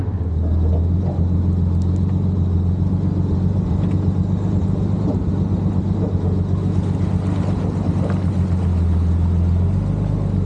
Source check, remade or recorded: recorded